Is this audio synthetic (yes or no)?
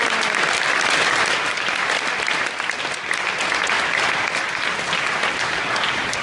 no